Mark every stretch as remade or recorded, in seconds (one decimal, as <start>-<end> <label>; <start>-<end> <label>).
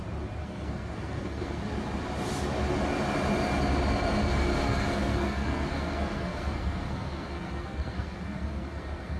0.0-0.4 recorded; 0.4-1.6 remade; 1.6-4.6 recorded; 4.6-9.2 remade